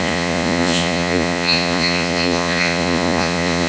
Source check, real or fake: fake